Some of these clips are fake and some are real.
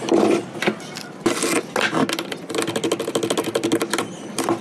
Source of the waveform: real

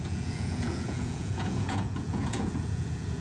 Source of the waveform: fake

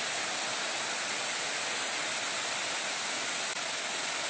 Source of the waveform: real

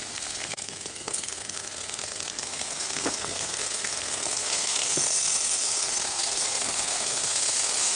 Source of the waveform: fake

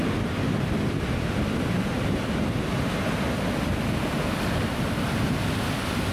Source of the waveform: real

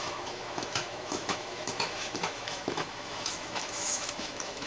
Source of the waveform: fake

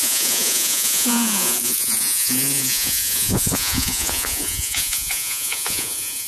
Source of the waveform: fake